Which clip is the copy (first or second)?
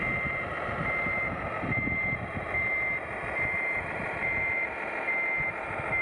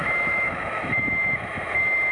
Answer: second